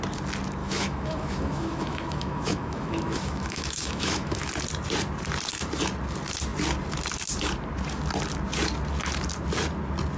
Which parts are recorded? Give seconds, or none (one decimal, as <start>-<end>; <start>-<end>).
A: 0.0-0.6; 4.5-10.2